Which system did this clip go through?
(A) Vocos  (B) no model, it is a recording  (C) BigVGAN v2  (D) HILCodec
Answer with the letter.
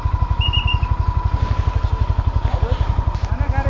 B